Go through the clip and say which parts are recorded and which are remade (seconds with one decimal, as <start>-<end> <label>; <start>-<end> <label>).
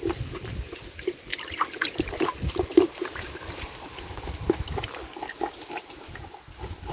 0.0-6.9 recorded